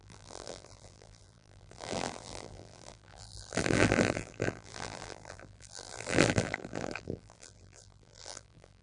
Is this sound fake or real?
fake